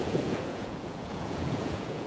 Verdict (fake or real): fake